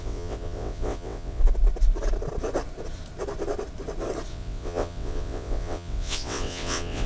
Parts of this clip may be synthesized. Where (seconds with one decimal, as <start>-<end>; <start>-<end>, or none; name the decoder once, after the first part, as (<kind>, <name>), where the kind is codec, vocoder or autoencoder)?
0.0-1.4 (vocoder, WaveNeXt); 4.3-7.1